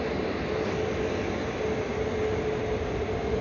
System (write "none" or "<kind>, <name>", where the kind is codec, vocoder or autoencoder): none